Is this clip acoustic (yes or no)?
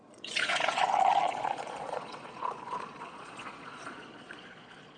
no